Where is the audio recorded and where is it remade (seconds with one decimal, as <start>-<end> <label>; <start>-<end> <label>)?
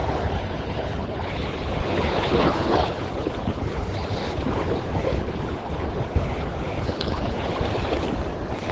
0.0-7.5 remade; 7.5-8.7 recorded